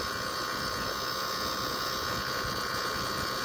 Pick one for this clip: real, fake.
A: fake